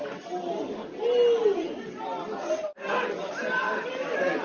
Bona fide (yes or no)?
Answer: yes